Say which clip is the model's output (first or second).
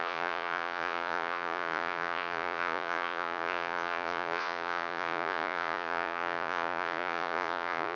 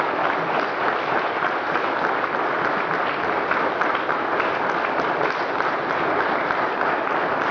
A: first